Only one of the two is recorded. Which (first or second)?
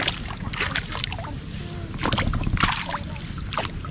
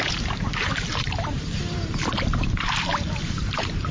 first